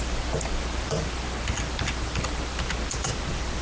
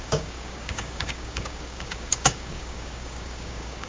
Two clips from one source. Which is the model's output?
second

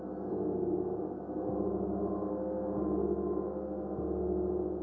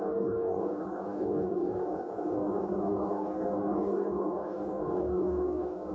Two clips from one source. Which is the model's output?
second